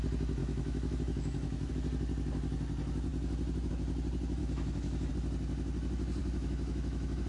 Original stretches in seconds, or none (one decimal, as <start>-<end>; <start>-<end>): 0.0-0.4; 1.7-4.4; 5.1-6.2